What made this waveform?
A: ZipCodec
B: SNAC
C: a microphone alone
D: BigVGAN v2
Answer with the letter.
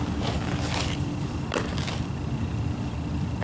C